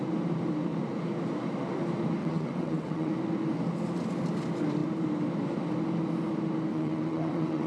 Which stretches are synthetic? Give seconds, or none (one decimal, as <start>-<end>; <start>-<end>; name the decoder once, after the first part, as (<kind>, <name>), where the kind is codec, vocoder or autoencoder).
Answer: 2.2-3.1 (vocoder, WaveNeXt); 6.7-7.7